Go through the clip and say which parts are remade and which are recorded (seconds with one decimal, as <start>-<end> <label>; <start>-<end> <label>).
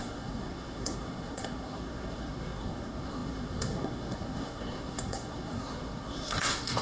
0.0-6.8 remade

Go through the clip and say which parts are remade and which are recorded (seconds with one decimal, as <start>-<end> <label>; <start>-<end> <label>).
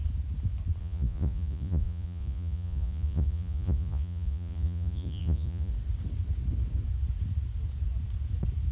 0.0-0.8 recorded; 0.8-5.7 remade; 5.7-8.7 recorded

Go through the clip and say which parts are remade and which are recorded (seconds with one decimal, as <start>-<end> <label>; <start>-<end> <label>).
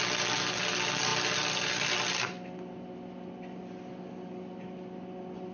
0.0-5.5 recorded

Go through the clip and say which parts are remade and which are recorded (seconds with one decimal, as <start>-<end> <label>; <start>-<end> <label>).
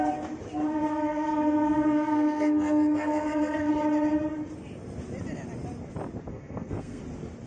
0.0-0.9 recorded; 0.9-3.7 remade; 3.7-6.3 recorded; 6.3-7.0 remade; 7.0-7.5 recorded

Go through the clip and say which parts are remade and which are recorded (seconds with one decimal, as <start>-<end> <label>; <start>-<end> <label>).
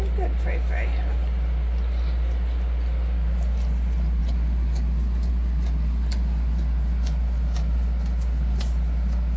0.0-9.4 recorded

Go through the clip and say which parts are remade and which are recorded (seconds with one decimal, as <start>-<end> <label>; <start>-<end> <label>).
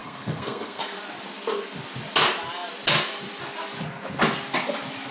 0.0-0.8 remade; 0.8-5.1 recorded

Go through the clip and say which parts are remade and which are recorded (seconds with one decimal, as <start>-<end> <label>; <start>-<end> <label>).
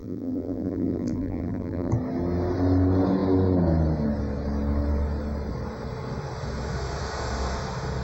0.0-1.9 remade; 1.9-8.0 recorded